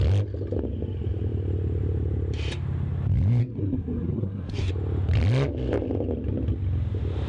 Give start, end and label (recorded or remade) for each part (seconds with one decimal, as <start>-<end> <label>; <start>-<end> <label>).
0.0-3.4 recorded; 3.4-4.7 remade; 4.7-7.3 recorded